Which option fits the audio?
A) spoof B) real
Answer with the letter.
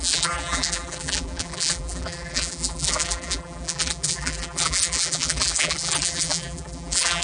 A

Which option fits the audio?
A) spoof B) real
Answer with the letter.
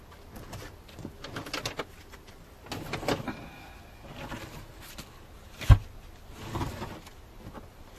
B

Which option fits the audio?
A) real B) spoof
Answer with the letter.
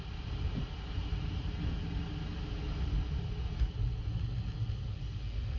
A